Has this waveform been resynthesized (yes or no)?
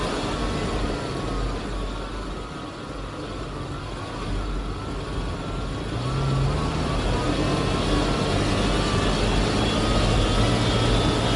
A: no